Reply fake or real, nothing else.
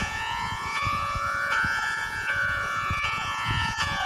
fake